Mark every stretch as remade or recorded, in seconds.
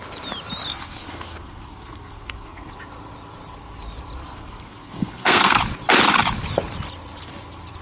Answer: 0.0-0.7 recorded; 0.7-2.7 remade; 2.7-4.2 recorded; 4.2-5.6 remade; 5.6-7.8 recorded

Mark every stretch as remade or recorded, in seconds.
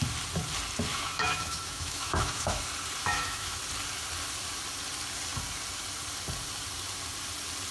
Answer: 0.0-0.9 recorded; 0.9-2.6 remade; 2.6-3.0 recorded; 3.0-3.6 remade; 3.6-7.7 recorded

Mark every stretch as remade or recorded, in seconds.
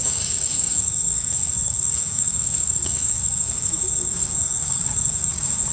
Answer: 0.0-5.7 remade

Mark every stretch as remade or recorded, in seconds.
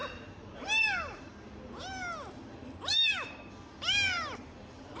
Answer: 0.0-0.6 recorded; 0.6-1.3 remade; 1.3-2.9 recorded; 2.9-5.0 remade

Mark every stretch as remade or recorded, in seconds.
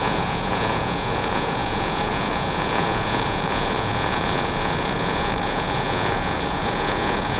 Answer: 0.0-7.4 remade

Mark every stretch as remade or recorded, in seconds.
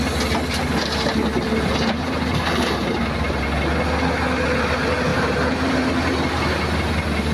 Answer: 0.0-0.8 recorded; 0.8-3.0 remade; 3.0-5.1 recorded; 5.1-6.1 remade; 6.1-7.3 recorded